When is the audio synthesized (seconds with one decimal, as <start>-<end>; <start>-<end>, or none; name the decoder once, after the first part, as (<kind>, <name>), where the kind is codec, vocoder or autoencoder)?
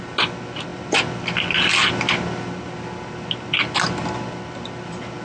none